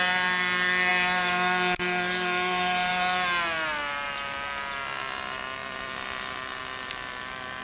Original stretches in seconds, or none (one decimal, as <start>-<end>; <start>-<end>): 0.0-5.6; 6.6-7.6